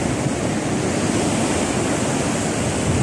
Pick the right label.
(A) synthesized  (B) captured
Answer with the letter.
B